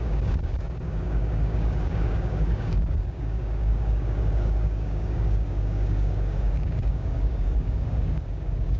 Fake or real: fake